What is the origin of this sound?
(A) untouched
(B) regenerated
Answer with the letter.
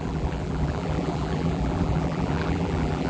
B